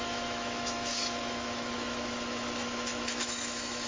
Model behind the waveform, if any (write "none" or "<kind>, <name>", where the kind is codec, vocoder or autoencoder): autoencoder, DAC-VAE